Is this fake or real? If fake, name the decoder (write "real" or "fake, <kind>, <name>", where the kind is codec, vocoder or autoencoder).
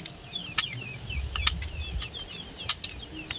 real